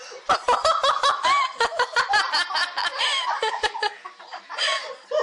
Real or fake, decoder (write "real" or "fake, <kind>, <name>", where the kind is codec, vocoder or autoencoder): real